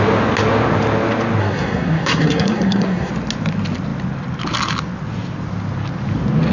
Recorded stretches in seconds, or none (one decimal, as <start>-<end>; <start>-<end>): 0.0-1.4; 3.1-6.5